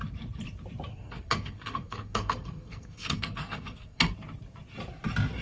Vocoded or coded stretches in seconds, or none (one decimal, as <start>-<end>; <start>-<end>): 0.9-4.1